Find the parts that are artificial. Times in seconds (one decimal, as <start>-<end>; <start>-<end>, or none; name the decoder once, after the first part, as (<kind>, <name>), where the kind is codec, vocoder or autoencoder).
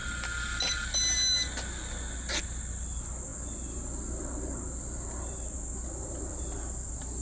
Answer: none